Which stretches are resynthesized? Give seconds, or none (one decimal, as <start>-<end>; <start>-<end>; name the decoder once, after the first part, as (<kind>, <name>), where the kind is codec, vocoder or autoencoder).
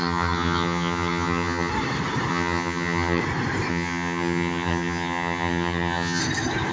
0.0-1.7 (vocoder, HiFi-GAN); 2.3-3.2; 3.7-6.2